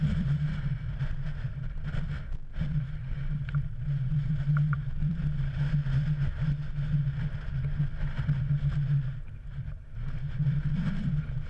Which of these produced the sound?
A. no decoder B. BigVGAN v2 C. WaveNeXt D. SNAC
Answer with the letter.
A